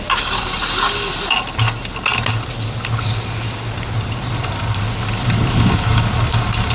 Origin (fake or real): real